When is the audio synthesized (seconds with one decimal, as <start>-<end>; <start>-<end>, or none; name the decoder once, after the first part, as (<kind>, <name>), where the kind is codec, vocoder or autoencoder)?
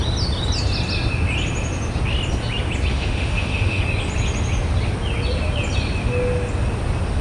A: 2.9-3.8 (autoencoder, DAC-VAE)